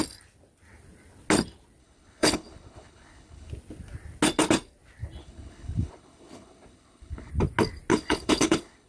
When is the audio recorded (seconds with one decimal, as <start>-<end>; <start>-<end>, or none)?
0.0-1.8; 3.5-5.2; 7.3-7.9